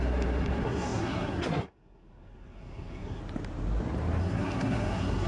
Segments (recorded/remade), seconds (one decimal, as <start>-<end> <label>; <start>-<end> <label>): 0.0-3.2 remade; 3.2-4.2 recorded; 4.2-5.3 remade